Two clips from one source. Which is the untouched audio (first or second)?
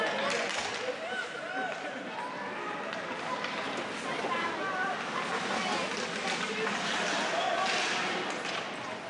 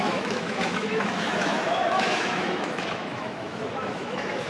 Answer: first